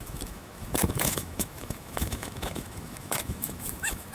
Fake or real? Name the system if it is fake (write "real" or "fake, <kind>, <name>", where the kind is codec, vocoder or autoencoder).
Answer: fake, autoencoder, DAC-VAE